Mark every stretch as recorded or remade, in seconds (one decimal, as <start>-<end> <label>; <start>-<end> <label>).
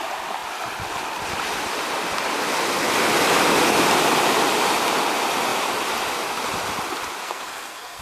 0.0-7.2 recorded; 7.2-8.0 remade